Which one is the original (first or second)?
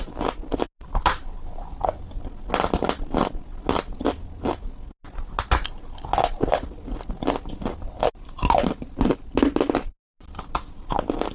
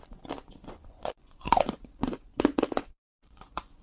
first